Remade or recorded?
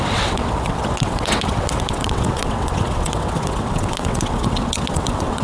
remade